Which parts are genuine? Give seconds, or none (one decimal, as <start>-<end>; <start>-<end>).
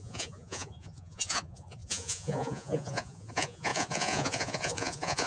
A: none